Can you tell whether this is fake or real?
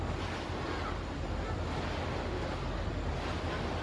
real